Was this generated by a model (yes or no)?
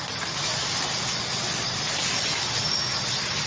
no